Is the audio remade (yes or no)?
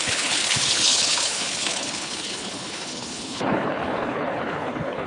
yes